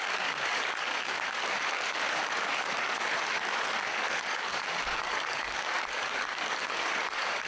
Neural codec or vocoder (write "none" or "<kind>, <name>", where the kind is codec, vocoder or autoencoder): codec, DAC